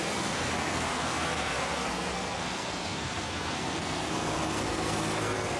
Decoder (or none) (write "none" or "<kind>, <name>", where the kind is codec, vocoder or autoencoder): codec, SNAC